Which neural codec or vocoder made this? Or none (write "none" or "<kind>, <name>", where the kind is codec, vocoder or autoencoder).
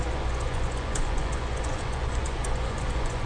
vocoder, Vocos